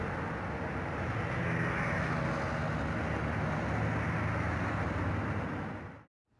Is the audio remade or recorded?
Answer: recorded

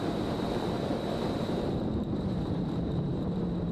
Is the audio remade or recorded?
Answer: remade